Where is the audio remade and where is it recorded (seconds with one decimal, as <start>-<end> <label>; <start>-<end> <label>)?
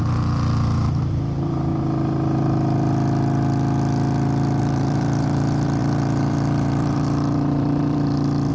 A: 0.0-1.7 remade; 1.7-4.6 recorded; 4.6-8.5 remade